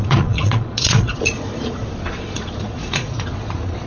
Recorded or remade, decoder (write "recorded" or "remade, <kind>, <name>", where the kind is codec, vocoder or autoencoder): remade, vocoder, Vocos